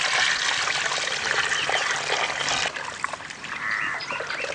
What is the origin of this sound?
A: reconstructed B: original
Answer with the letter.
B